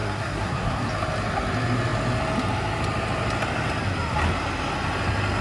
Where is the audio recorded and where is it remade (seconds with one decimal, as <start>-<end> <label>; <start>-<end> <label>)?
0.0-0.9 remade; 0.9-5.4 recorded